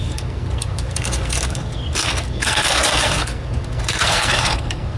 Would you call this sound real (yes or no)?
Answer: no